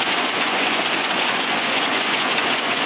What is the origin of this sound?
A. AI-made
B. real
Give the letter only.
A